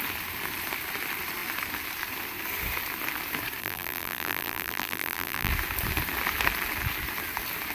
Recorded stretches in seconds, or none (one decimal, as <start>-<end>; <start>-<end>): 0.0-3.6; 5.5-7.7